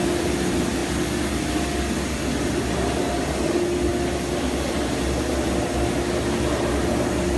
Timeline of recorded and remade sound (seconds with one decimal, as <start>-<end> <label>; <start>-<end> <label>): 0.0-7.4 recorded